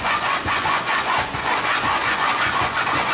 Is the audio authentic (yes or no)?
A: no